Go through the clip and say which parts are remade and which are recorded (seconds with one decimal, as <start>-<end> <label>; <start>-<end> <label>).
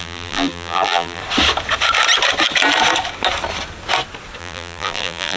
0.0-1.2 remade; 1.2-4.4 recorded; 4.4-5.4 remade